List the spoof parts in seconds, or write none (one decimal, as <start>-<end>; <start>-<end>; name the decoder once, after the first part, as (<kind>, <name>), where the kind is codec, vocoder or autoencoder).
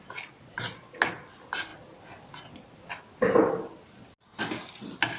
none